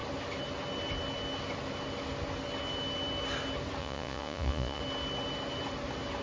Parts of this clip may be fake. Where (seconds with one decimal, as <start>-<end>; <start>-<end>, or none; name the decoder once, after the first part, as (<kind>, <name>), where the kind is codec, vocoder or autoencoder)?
3.8-4.8 (vocoder, Vocos)

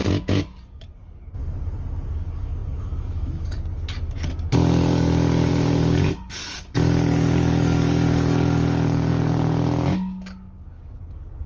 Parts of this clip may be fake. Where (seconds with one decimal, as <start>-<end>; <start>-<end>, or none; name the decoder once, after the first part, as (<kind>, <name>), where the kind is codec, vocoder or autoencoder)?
0.0-1.4 (codec, DAC); 2.1-11.5

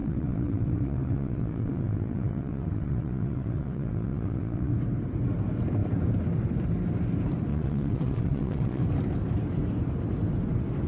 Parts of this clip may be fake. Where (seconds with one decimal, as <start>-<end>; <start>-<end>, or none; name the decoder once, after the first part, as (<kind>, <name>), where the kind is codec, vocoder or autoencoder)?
0.0-4.7 (vocoder, WaveNeXt); 7.5-8.8

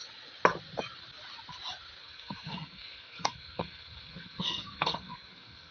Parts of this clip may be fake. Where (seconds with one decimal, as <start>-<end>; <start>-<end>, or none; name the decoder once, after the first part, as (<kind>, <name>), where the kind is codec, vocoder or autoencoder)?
2.0-5.7 (codec, SNAC)

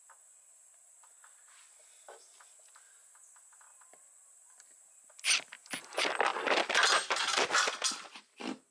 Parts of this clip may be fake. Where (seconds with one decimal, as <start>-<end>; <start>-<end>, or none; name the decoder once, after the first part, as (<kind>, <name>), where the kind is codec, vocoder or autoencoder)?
none

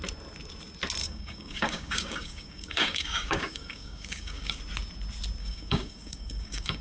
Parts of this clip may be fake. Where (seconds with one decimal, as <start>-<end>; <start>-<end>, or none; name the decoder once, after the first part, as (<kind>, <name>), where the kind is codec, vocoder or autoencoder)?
1.0-4.6 (codec, DAC); 5.4-6.8

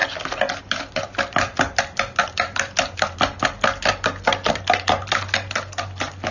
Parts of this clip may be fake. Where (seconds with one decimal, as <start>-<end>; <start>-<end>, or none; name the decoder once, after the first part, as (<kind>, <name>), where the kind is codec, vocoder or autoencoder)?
none

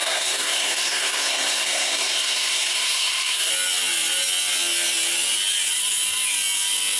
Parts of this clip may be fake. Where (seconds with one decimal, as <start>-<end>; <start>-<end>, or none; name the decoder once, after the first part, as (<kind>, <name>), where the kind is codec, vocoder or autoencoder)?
0.0-3.5 (codec, SNAC)